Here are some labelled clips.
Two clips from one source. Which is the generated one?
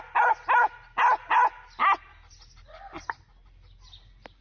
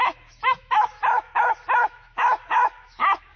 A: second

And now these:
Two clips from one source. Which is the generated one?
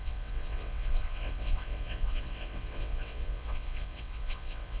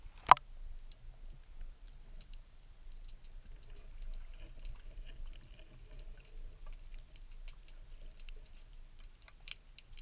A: first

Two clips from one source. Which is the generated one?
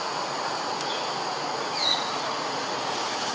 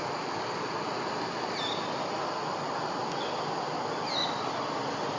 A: first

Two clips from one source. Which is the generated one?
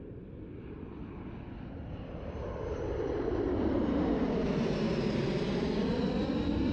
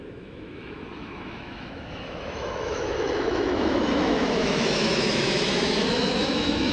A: second